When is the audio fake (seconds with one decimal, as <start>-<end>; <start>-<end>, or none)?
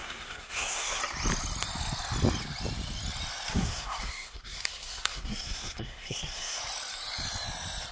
0.0-1.0; 3.5-6.6